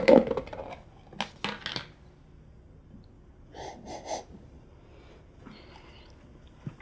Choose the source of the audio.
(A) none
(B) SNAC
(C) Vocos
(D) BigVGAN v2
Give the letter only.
A